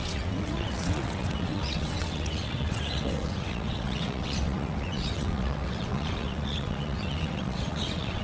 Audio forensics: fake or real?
fake